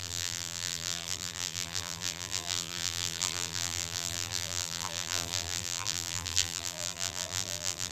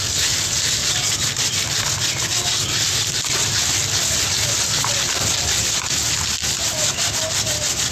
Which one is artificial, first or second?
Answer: first